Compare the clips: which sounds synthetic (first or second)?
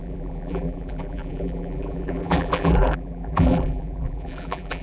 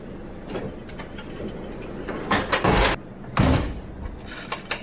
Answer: first